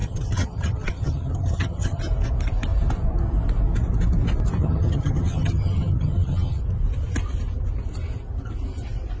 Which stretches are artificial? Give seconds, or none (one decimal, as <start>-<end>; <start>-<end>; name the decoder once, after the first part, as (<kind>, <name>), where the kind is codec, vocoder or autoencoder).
0.0-2.0 (vocoder, HiFi-GAN); 4.6-6.6